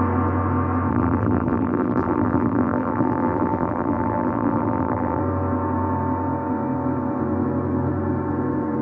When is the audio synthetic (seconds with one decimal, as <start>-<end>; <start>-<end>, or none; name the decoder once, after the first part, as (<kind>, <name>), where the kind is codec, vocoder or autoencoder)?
0.9-5.2 (vocoder, BigVGAN v2)